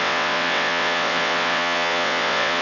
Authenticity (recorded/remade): remade